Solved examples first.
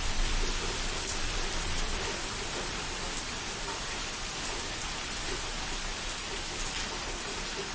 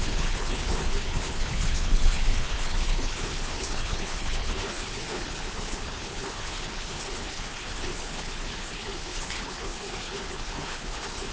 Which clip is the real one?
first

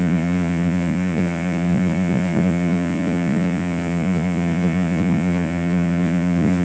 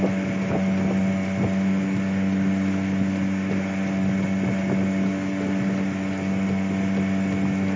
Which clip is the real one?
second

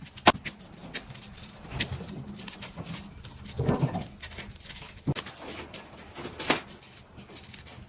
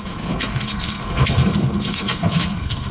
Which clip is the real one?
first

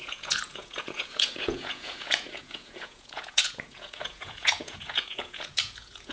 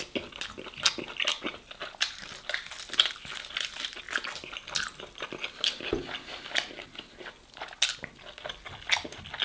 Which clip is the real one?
second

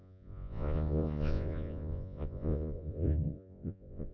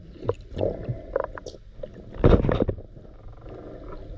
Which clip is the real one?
second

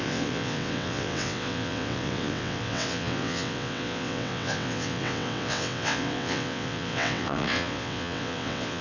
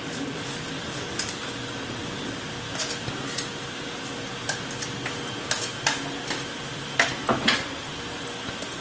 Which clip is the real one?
second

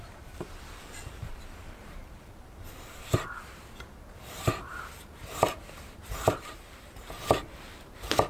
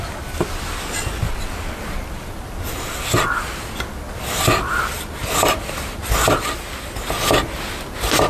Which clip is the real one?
second